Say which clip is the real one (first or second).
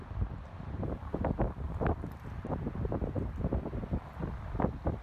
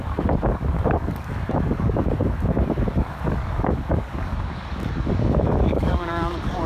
first